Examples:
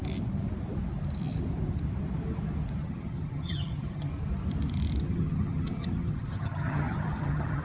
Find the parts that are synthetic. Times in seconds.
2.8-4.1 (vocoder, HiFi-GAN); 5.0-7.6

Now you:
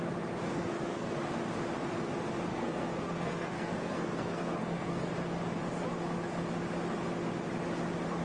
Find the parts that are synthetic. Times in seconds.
0.5-1.1 (codec, SNAC); 2.5-5.1

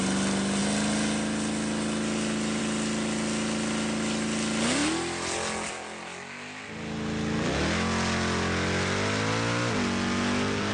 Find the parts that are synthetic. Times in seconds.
none

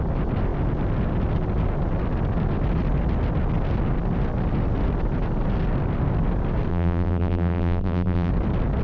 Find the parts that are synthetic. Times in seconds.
6.7-8.3 (vocoder, BigVGAN v2)

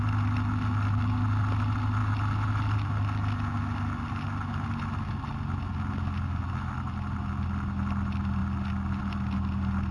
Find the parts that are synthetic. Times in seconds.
none

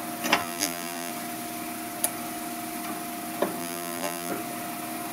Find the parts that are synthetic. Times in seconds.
0.4-1.1 (vocoder, BigVGAN v2); 3.6-4.3

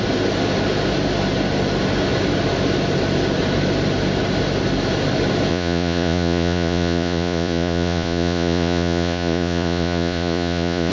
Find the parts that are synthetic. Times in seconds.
5.5-10.9 (vocoder, Vocos)

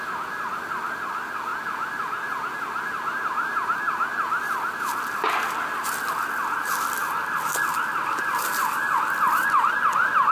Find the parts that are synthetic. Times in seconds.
none